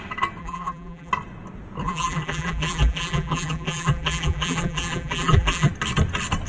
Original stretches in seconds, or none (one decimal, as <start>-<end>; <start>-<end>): 0.0-0.4; 1.1-1.8; 5.7-6.5